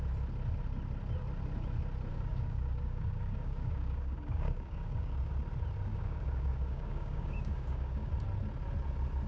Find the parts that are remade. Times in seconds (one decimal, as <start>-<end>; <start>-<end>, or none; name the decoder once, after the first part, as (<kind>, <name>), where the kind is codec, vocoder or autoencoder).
2.1-5.3 (codec, DAC); 5.9-8.1